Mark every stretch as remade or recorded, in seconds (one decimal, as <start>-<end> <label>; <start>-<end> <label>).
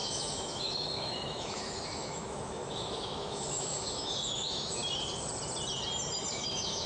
0.0-4.8 remade; 4.8-6.3 recorded; 6.3-6.9 remade